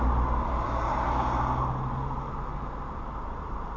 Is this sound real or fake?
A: real